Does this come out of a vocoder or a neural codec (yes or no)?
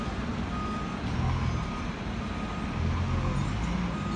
no